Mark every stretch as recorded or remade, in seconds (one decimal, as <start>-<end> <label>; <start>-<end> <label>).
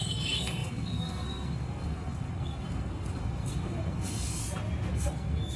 0.0-4.4 remade; 4.4-4.9 recorded; 4.9-5.6 remade